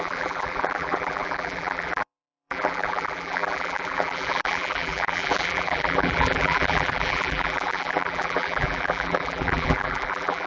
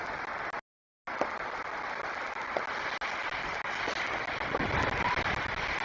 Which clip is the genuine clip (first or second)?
second